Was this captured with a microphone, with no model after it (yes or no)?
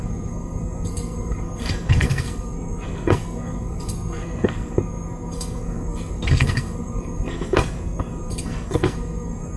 no